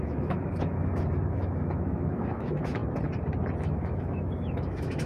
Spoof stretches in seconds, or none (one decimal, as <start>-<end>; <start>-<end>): 0.0-2.8; 3.6-5.1

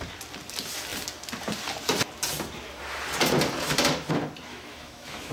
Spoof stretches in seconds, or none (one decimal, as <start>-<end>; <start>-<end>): 4.5-5.3

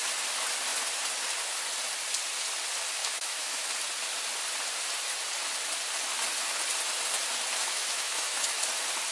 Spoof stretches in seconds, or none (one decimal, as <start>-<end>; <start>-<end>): 3.0-3.7; 7.6-8.6

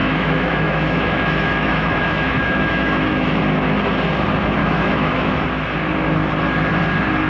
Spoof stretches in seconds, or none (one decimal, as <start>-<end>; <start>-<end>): 0.0-3.4; 4.6-5.3

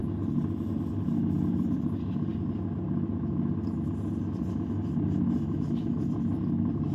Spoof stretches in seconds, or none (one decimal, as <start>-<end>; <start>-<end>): none